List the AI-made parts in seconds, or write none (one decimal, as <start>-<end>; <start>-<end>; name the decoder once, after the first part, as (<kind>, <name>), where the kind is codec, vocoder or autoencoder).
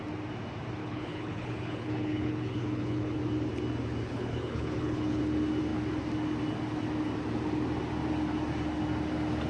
0.8-3.2 (codec, HILCodec); 4.0-5.2